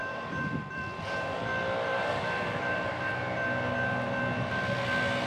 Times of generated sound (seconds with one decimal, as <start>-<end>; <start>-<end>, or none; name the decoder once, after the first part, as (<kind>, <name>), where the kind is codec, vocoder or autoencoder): 0.0-1.0 (vocoder, BigVGAN v2); 1.9-3.1